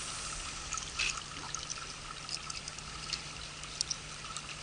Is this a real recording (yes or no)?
yes